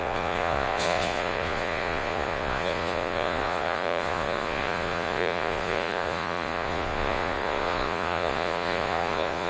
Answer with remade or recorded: remade